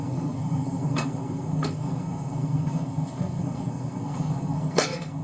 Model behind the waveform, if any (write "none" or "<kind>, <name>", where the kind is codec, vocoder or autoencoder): codec, SNAC